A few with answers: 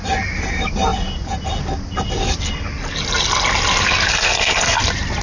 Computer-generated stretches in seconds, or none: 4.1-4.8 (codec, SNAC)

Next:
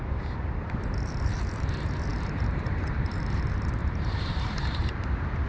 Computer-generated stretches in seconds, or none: 0.0-5.5 (vocoder, BigVGAN v2)

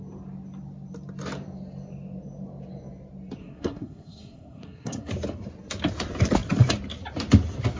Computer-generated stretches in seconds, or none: 3.4-5.1 (codec, SNAC)

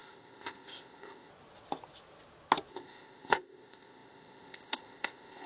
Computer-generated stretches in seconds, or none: 0.0-1.3 (codec, ZipCodec); 2.7-5.5

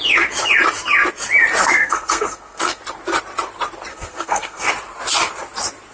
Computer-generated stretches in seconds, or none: 1.6-2.8 (codec, SNAC); 3.9-4.7